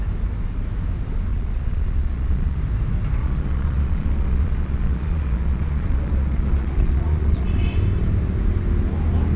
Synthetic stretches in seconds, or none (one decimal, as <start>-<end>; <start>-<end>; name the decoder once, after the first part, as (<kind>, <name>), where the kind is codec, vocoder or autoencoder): 1.3-2.6 (vocoder, Vocos); 3.2-7.5